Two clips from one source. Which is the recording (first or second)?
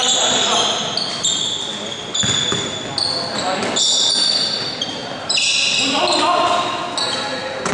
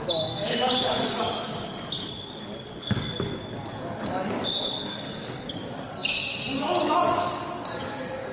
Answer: first